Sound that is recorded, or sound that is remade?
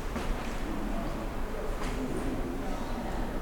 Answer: recorded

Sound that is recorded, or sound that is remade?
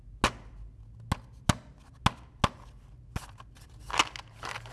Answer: recorded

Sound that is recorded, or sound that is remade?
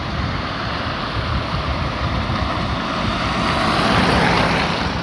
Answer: remade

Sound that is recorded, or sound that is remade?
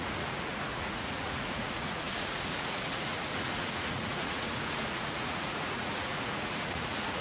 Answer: remade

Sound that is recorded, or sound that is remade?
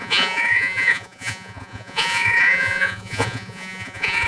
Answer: remade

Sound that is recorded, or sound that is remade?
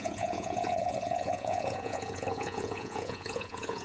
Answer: remade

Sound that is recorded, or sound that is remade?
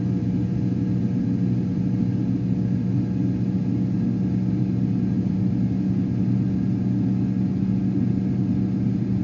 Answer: recorded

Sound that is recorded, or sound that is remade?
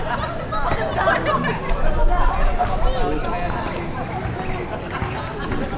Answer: recorded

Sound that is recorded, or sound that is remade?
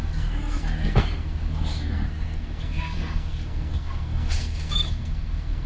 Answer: remade